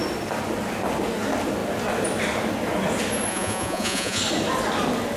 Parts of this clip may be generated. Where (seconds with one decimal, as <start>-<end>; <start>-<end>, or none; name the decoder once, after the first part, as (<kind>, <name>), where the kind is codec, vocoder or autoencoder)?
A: 3.3-4.2 (vocoder, Vocos)